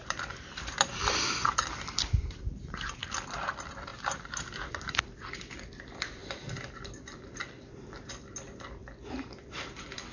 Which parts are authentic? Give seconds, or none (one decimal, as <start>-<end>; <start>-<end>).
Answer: 3.9-4.7; 6.2-7.0; 8.8-9.4